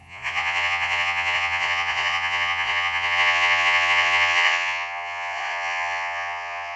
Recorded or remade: remade